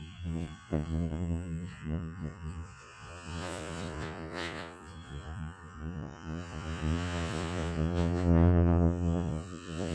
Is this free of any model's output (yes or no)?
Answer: no